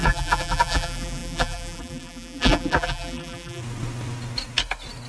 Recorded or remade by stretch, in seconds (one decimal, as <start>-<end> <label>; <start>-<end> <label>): 0.0-3.6 remade; 3.6-5.1 recorded